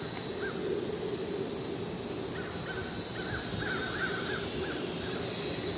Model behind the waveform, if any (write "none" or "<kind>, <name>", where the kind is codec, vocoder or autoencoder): none